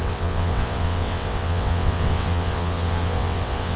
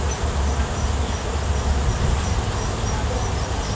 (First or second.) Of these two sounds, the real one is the second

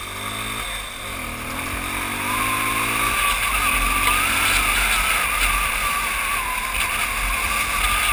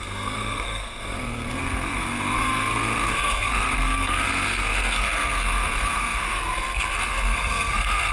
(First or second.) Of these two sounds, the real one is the first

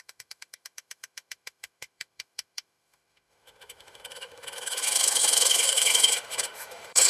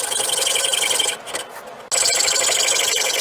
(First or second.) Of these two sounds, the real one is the second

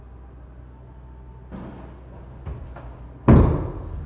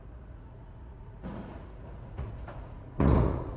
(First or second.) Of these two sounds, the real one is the first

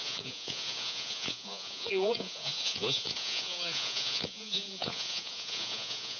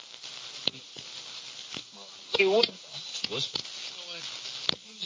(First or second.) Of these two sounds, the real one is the second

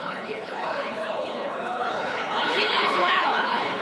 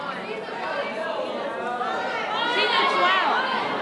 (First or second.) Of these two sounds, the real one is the second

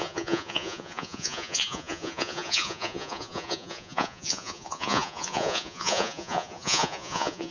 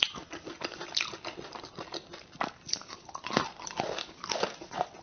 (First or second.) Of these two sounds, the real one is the second